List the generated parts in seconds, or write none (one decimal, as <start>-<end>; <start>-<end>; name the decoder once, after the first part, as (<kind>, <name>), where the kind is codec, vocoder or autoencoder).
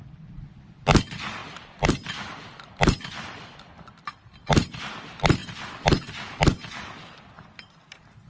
1.4-4.8 (vocoder, BigVGAN v2); 5.4-6.1